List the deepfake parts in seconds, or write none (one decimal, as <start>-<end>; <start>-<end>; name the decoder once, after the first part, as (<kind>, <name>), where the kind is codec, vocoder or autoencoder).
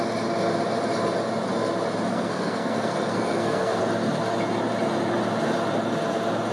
2.1-3.8 (codec, SNAC)